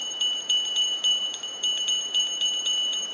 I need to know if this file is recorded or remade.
remade